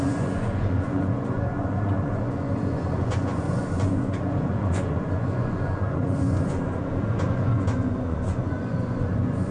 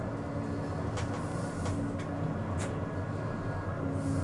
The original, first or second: second